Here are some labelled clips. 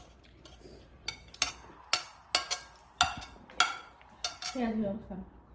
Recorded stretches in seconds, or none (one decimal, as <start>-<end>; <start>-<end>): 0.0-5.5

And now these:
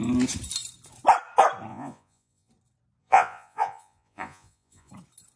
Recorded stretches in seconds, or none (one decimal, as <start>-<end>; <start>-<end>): 0.0-1.7; 2.5-3.0; 4.9-5.4

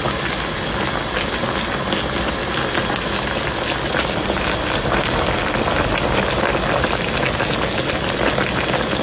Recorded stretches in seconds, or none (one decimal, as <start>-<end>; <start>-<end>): 0.0-9.0